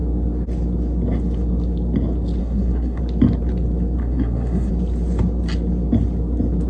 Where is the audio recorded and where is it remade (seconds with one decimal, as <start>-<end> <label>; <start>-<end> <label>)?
0.0-2.4 recorded; 2.4-3.0 remade; 3.0-4.0 recorded; 4.0-4.7 remade; 4.7-6.7 recorded